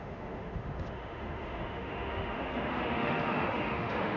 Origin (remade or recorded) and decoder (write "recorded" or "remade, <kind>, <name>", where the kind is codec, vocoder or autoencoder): remade, autoencoder, DAC-VAE